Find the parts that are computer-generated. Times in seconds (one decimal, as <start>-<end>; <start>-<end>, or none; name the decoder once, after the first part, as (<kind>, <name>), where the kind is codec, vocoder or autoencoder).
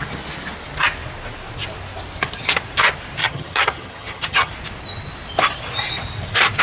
3.2-4.5 (vocoder, HiFi-GAN)